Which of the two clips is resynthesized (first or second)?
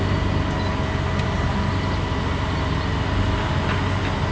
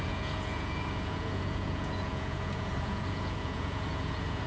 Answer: second